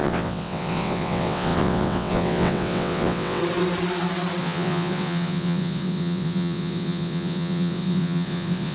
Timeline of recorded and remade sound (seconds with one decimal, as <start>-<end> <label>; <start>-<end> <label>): 0.0-3.4 remade; 3.4-4.4 recorded; 4.4-8.7 remade